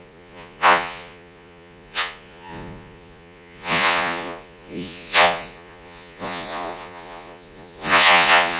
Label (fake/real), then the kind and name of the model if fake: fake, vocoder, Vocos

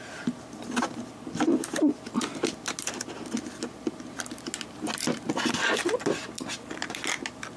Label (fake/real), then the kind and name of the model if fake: real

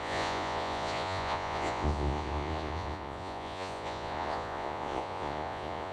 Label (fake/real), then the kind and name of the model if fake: fake, vocoder, Vocos